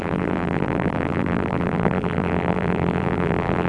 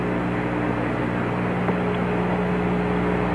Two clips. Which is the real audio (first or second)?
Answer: second